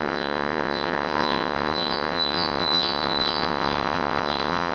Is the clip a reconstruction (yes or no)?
yes